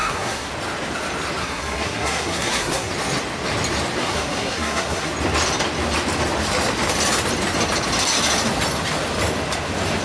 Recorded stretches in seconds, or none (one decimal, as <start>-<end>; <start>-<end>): 0.5-1.4; 2.9-4.0; 5.1-10.0